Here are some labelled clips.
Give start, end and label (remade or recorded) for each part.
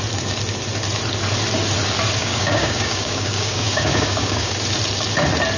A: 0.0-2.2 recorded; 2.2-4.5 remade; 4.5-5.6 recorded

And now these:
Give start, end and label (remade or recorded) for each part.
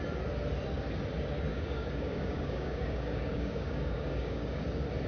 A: 0.0-1.5 recorded; 1.5-4.6 remade; 4.6-5.1 recorded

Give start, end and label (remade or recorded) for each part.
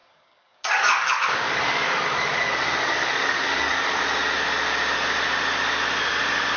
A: 0.0-4.0 remade; 4.0-6.6 recorded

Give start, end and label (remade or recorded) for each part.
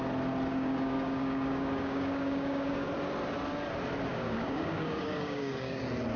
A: 0.0-0.5 recorded; 0.5-2.9 remade; 2.9-4.1 recorded; 4.1-5.8 remade; 5.8-6.2 recorded